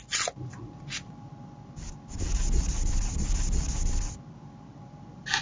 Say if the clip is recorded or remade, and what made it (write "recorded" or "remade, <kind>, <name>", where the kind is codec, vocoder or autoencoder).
recorded